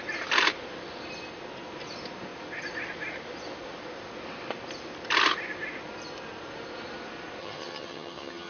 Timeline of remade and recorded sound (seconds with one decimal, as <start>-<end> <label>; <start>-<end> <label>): 0.0-7.4 recorded; 7.4-8.5 remade